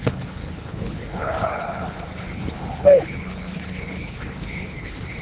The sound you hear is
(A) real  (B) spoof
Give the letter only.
B